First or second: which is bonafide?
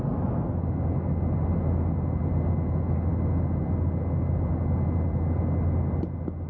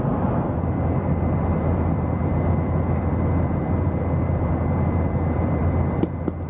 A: first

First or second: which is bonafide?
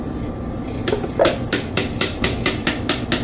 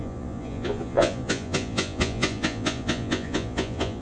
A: first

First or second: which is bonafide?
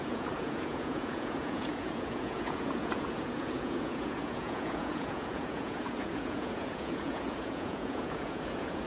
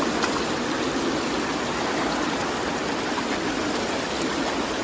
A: second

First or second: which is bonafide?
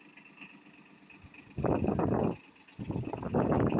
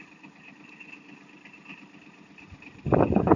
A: first